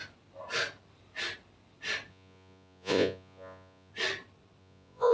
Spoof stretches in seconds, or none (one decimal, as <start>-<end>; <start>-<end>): 2.1-3.9; 4.6-5.1